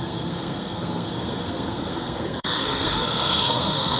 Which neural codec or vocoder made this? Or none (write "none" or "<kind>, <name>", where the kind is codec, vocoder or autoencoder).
codec, SNAC